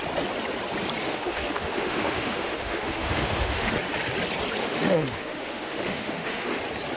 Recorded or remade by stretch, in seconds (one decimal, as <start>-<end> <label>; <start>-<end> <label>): 0.0-1.0 recorded; 1.0-3.7 remade; 3.7-4.6 recorded; 4.6-6.6 remade; 6.6-7.0 recorded